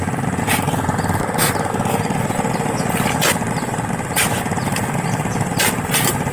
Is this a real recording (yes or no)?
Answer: yes